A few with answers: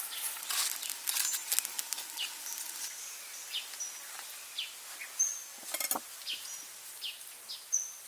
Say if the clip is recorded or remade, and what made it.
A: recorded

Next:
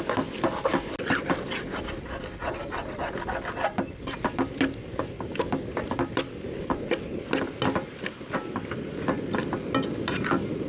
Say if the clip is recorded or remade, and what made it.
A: recorded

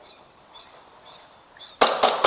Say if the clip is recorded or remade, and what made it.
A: recorded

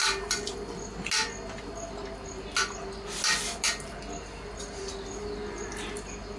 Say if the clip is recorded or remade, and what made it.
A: recorded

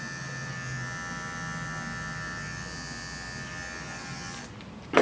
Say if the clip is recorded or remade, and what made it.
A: recorded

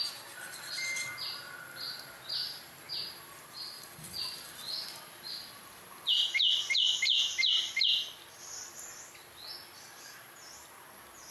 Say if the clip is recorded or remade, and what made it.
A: recorded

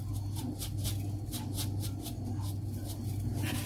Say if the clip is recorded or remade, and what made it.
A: recorded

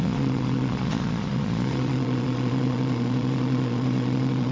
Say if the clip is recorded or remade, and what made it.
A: remade, vocoder, Vocos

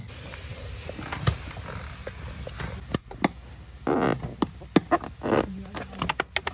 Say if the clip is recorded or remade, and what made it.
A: recorded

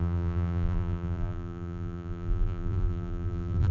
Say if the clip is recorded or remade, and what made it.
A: remade, vocoder, BigVGAN v2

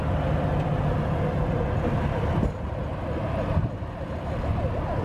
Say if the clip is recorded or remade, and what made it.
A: recorded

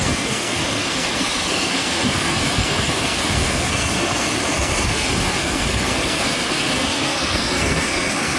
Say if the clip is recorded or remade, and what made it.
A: remade, codec, SNAC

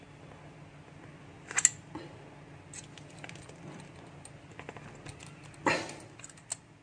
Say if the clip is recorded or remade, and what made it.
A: recorded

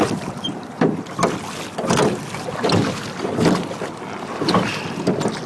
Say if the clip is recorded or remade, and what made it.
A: recorded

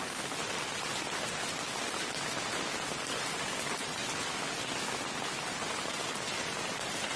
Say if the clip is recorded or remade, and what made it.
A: recorded